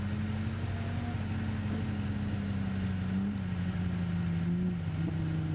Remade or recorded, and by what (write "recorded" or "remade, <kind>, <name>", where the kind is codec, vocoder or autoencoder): recorded